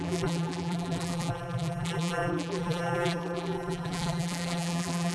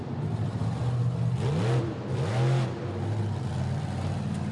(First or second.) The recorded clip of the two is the second